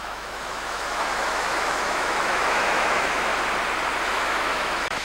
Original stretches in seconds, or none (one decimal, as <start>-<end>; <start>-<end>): 3.3-4.1